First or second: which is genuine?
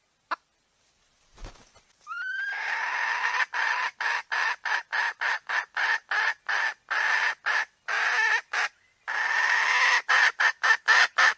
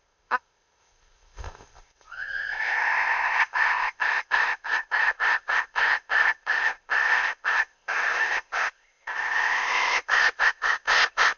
first